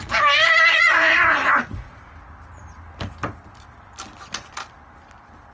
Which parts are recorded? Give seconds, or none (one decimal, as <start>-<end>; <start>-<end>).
0.0-0.7; 2.0-5.5